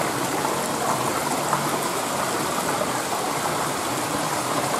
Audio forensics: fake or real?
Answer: real